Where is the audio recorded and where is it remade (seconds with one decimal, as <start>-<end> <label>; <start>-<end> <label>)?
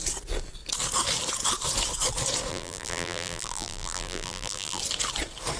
0.0-2.5 recorded; 2.5-4.8 remade; 4.8-5.6 recorded